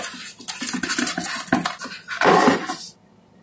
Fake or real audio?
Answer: real